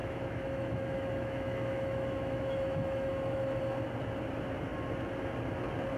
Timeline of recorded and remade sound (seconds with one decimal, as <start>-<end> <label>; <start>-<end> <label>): 0.0-3.6 remade; 3.6-6.0 recorded